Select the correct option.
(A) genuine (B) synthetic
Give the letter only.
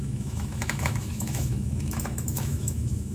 B